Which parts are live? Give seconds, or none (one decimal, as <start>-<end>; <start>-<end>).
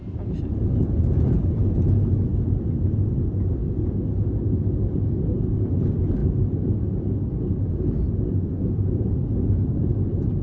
0.0-10.4